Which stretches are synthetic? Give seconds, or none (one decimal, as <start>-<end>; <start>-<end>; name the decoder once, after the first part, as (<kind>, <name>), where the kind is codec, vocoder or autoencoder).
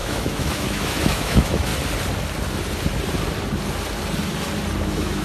0.0-1.7 (autoencoder, DAC-VAE); 4.8-5.2